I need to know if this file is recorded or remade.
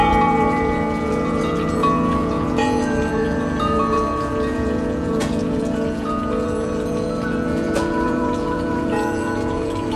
remade